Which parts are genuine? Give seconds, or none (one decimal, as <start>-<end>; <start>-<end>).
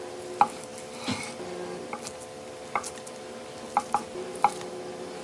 0.0-5.2